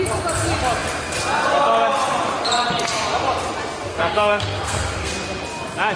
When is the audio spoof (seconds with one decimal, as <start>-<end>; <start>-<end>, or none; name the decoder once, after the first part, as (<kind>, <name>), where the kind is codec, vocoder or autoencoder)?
3.9-5.1 (codec, SNAC)